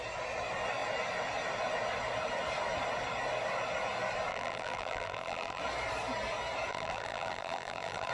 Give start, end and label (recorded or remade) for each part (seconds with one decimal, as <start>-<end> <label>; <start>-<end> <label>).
0.0-4.3 recorded; 4.3-5.6 remade; 5.6-6.7 recorded; 6.7-8.1 remade